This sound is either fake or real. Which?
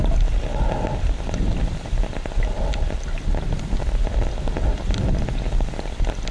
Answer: real